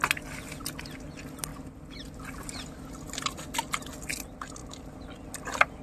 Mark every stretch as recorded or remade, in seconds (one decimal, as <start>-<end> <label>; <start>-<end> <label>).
0.0-5.8 recorded